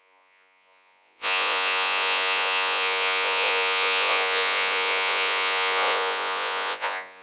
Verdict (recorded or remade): remade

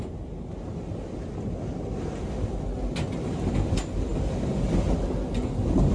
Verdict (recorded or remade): recorded